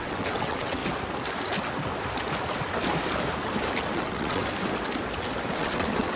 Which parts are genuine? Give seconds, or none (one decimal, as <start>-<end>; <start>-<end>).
0.8-3.9; 4.4-5.5